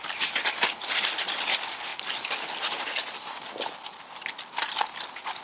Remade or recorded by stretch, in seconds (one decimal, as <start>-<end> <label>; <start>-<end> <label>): 0.0-5.4 recorded